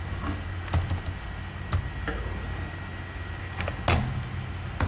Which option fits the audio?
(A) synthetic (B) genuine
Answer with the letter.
B